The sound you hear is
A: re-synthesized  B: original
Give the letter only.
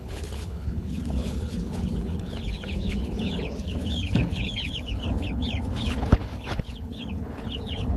A